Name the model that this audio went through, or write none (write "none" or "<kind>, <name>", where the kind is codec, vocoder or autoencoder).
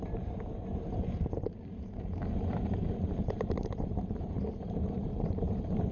vocoder, BigVGAN v2